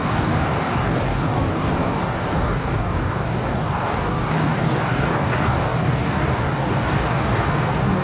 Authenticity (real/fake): fake